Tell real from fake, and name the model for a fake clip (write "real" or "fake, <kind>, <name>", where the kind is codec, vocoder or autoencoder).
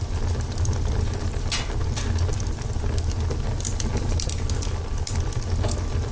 real